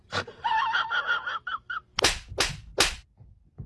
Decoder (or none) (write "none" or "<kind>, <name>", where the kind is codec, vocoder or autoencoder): none